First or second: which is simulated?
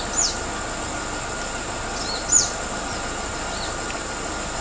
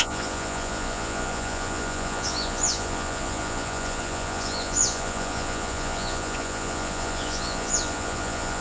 second